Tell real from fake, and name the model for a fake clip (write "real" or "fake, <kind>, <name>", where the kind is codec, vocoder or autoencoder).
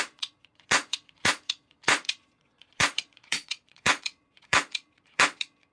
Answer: fake, vocoder, Vocos